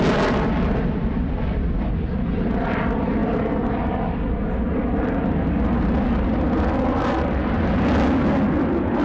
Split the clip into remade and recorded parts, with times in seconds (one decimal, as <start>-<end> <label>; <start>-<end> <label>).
0.0-9.0 recorded